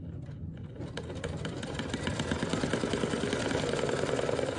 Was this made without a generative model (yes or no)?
yes